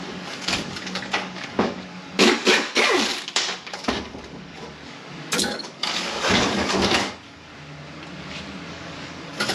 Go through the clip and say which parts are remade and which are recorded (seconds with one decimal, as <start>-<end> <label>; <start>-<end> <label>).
0.0-7.5 remade; 7.5-8.7 recorded; 8.7-9.5 remade